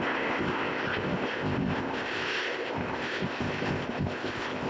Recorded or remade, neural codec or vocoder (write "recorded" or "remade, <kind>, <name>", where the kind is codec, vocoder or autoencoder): remade, codec, ZipCodec